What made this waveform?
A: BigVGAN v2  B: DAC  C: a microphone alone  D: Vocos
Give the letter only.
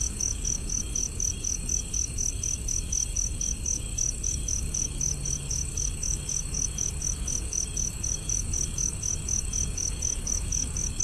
B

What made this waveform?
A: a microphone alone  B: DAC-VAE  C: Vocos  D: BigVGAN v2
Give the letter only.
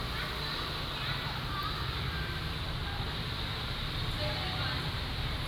A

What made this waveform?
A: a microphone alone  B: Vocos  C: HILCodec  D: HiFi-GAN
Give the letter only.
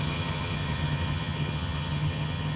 D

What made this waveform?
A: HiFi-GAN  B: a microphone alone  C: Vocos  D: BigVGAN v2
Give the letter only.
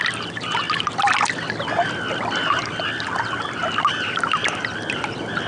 B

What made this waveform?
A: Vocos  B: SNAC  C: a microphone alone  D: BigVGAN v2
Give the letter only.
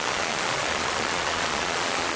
A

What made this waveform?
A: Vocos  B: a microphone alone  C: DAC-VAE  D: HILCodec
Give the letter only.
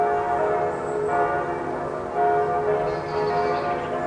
B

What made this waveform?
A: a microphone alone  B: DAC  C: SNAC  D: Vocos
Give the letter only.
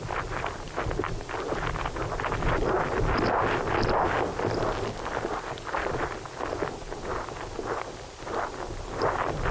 A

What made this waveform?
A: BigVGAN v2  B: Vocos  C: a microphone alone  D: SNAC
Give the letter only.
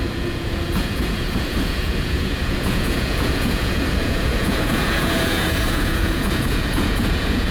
B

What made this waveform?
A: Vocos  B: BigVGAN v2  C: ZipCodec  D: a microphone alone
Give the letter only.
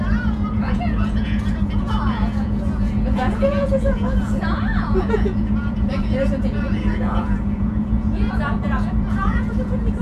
A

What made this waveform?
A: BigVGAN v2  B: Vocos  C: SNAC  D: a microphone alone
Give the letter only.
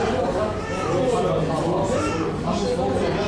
D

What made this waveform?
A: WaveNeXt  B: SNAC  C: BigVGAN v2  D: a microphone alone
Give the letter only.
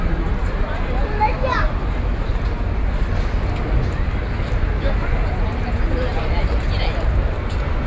D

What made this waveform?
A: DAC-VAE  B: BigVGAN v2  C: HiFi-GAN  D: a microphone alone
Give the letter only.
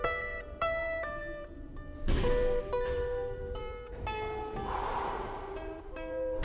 B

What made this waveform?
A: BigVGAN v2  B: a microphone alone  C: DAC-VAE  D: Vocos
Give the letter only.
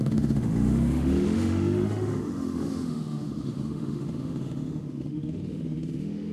C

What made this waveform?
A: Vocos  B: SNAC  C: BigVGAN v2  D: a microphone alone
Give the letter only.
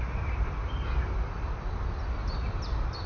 D